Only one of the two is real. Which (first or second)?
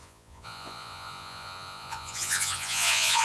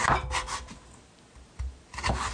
second